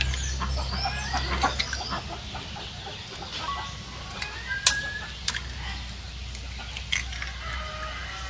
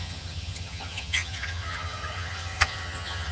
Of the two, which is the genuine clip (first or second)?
first